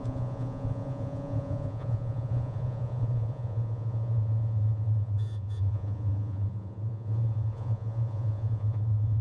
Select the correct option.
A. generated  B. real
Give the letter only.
A